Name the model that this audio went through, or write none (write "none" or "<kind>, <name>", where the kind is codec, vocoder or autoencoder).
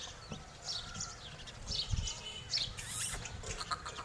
vocoder, BigVGAN v2